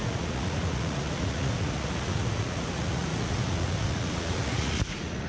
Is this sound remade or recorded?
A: remade